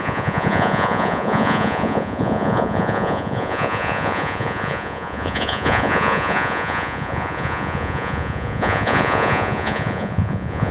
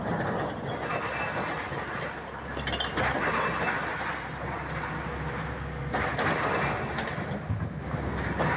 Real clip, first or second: second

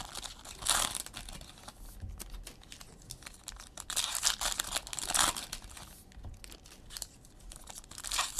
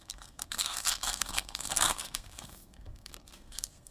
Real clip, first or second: first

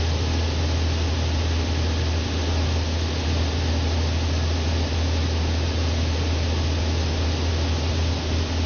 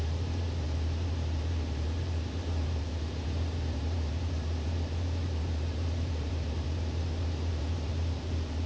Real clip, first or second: first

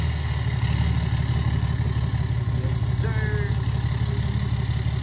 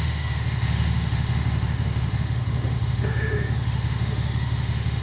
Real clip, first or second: first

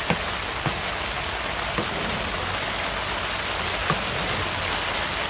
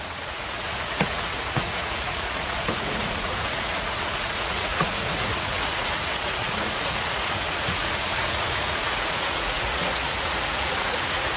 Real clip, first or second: first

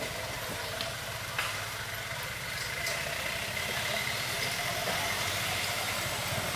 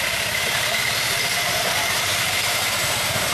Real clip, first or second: first